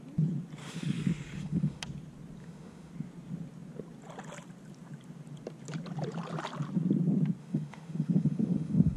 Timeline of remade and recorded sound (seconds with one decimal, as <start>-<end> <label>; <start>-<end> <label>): 0.0-0.6 recorded; 0.6-1.8 remade; 1.8-2.4 recorded; 2.4-2.9 remade; 2.9-7.4 recorded; 7.4-9.0 remade